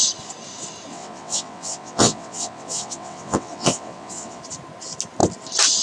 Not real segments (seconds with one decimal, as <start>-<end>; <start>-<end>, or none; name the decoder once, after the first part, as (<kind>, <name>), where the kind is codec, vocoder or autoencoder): 0.9-4.4 (vocoder, WaveNeXt)